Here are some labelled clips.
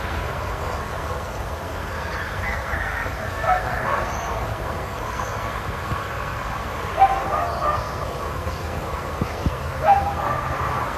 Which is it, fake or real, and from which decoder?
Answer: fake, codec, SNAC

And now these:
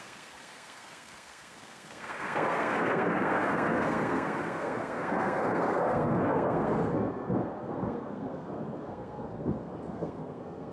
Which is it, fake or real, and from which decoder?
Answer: fake, codec, SNAC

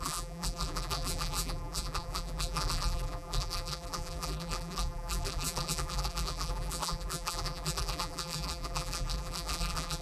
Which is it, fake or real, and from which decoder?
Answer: fake, vocoder, BigVGAN v2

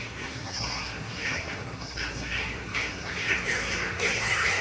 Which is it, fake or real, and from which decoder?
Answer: fake, codec, SNAC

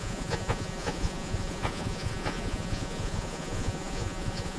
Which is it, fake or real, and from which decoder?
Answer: fake, vocoder, Vocos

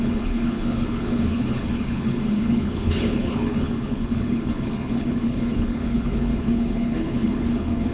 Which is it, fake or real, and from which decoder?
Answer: fake, codec, HILCodec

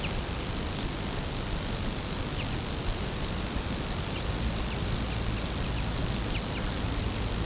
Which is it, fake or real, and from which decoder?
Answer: real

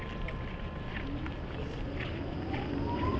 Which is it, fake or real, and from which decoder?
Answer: real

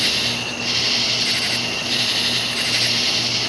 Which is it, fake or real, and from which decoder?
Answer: real